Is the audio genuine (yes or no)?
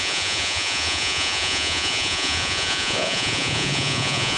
no